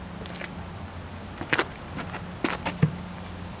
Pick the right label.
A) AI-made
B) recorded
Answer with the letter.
B